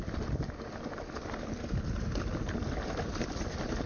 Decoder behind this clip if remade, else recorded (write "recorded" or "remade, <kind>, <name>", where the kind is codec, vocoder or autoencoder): recorded